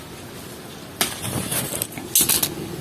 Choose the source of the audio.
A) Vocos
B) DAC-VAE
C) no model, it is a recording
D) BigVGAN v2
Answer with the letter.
C